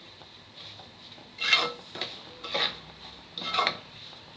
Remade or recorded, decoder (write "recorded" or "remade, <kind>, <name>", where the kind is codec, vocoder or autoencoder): recorded